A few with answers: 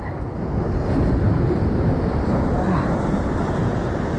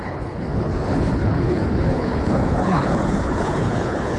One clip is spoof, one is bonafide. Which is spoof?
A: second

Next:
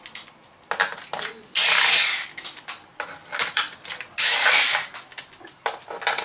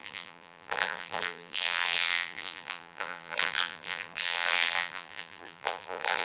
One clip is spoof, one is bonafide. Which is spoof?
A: second